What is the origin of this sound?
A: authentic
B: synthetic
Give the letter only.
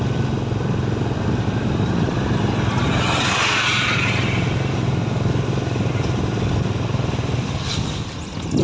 A